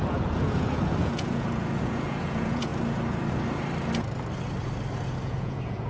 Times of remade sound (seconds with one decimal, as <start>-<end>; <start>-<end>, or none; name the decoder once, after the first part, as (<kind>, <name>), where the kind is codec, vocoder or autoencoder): 0.0-2.7 (vocoder, Vocos); 5.1-5.9